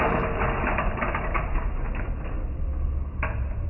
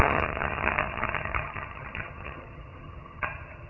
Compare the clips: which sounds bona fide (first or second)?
first